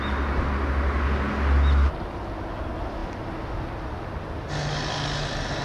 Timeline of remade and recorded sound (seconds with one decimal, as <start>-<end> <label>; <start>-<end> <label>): 0.0-5.6 recorded

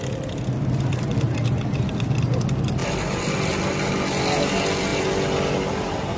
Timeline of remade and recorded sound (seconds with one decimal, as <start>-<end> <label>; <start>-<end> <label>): 0.0-6.2 recorded

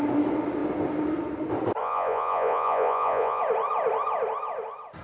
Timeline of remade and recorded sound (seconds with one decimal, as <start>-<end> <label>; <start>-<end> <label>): 0.0-1.8 recorded; 1.8-3.4 remade; 3.4-5.0 recorded

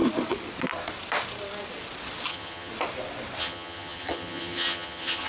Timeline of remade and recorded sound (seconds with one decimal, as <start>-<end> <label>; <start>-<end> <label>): 0.0-2.3 recorded; 2.3-2.7 remade; 2.7-3.4 recorded; 3.4-5.3 remade

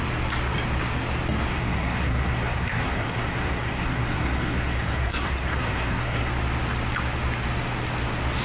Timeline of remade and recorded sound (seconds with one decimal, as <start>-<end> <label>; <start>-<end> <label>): 0.0-1.5 recorded; 1.5-6.3 remade; 6.3-8.4 recorded

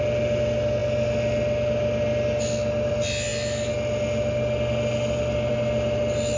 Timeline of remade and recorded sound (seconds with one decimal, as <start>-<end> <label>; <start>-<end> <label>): 0.0-6.4 recorded